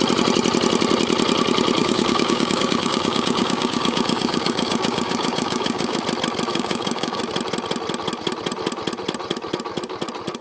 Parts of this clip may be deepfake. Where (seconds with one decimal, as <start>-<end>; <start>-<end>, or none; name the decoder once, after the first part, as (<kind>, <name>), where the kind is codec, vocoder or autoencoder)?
1.8-6.0 (codec, DAC); 6.5-7.2